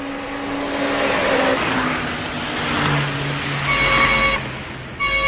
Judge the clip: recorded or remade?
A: recorded